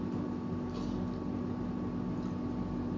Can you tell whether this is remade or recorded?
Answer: recorded